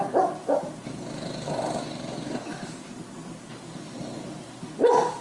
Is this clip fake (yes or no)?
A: no